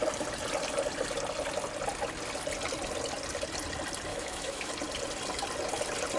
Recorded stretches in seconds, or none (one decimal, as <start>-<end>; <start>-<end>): 0.0-4.1; 4.7-6.2